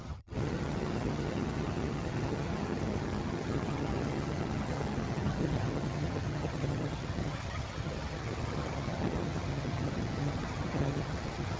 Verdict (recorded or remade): remade